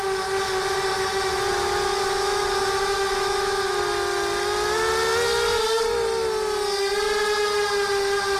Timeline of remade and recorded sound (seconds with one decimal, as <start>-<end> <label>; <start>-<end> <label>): 0.0-0.9 recorded; 0.9-1.5 remade; 1.5-1.9 recorded; 1.9-3.8 remade; 3.8-8.4 recorded